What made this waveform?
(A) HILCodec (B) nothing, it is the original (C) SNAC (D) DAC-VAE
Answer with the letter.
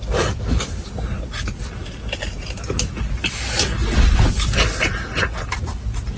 B